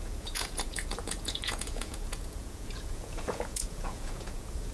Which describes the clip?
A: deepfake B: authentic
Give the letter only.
A